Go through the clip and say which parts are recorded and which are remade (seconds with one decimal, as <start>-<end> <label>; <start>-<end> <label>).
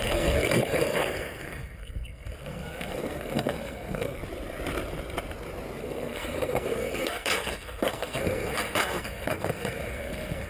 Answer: 0.0-4.2 remade; 4.2-5.8 recorded; 5.8-10.5 remade